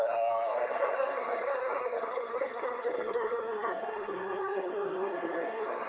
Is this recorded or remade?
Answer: remade